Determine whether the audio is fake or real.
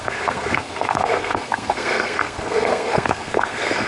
fake